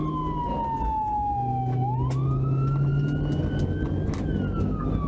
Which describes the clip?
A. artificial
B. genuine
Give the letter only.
B